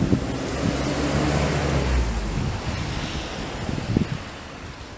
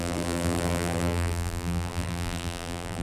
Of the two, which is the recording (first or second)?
first